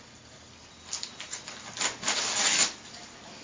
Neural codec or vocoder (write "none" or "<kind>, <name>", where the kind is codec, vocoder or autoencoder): none